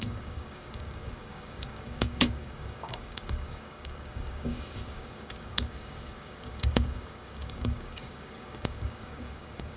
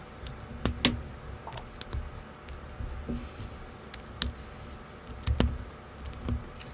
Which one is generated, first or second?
first